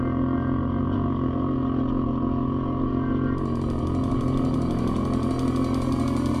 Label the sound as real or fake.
real